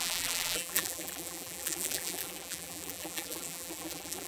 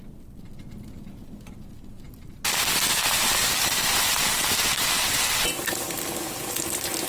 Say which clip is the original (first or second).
second